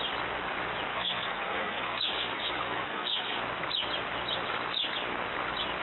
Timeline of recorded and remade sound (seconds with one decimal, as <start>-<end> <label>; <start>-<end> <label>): 0.0-0.9 recorded; 0.9-3.4 remade; 3.4-5.8 recorded